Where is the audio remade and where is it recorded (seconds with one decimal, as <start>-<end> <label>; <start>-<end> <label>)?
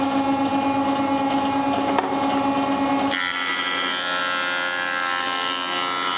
0.0-6.2 recorded